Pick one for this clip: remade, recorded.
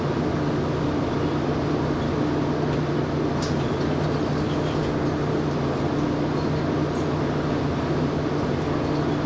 recorded